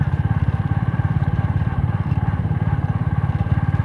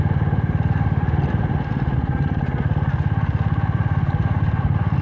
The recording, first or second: second